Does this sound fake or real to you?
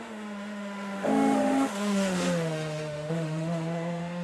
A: fake